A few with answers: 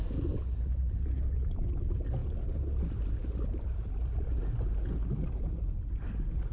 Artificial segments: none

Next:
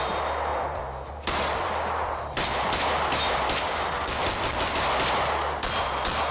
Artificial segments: 3.6-4.1 (autoencoder, DAC-VAE)